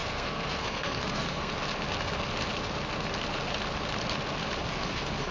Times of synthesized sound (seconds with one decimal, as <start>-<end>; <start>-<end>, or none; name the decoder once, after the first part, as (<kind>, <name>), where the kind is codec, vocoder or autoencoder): 0.0-1.5 (codec, SNAC); 4.7-5.3